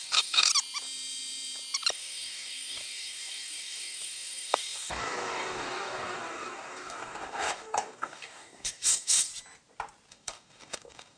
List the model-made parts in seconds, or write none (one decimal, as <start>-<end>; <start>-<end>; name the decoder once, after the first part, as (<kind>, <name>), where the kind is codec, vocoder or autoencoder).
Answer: 0.0-0.5 (codec, DAC); 1.9-9.3; 10.1-11.2

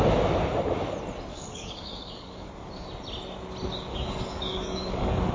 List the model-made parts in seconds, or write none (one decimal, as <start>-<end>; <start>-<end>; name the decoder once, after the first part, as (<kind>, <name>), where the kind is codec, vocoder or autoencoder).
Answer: 1.3-2.5 (codec, DAC); 3.9-5.3

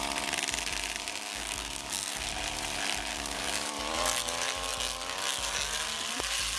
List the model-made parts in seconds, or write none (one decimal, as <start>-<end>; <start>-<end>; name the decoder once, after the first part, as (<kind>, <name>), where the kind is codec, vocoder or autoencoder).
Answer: 1.3-2.3 (codec, DAC); 3.1-3.8

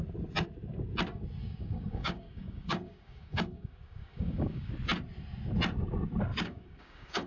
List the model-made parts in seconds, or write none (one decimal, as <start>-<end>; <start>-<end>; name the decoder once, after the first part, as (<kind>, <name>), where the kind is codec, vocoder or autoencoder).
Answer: 1.4-4.7 (codec, DAC); 6.3-7.3

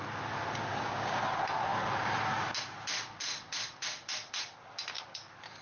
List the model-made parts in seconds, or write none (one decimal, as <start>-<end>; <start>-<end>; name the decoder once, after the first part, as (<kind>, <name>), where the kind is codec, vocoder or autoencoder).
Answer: 0.7-1.2 (codec, DAC)